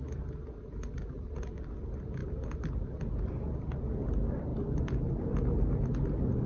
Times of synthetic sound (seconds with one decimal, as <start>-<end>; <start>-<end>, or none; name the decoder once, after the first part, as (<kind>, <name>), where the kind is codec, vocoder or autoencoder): none